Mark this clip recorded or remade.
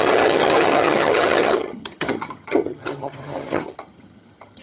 remade